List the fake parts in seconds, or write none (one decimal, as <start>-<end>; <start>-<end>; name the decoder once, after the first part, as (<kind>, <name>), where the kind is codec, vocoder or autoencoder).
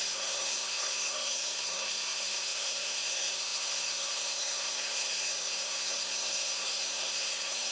0.0-7.7 (codec, SNAC)